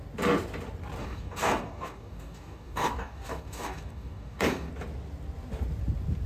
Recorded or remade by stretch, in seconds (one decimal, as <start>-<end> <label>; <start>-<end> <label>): 0.0-1.0 recorded; 1.0-4.7 remade; 4.7-6.3 recorded